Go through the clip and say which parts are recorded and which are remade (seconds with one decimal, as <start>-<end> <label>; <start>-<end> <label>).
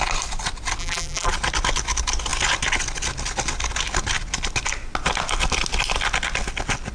0.0-0.8 recorded; 0.8-1.3 remade; 1.3-6.9 recorded